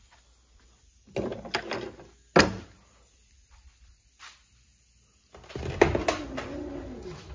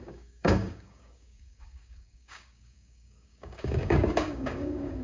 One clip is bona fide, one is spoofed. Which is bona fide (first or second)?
first